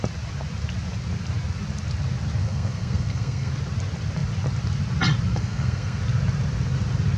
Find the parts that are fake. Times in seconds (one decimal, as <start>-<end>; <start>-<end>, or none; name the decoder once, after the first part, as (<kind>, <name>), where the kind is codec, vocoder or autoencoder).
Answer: 2.4-3.5 (codec, SNAC); 5.3-6.0